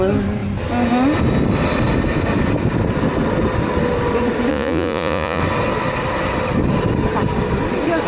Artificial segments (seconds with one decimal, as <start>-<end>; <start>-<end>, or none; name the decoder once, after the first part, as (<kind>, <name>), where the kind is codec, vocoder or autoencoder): 4.5-5.4 (vocoder, Vocos)